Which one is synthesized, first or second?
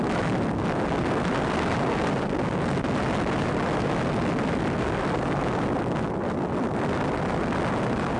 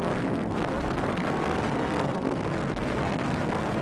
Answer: second